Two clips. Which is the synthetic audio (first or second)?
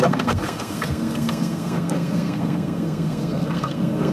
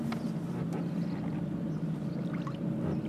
first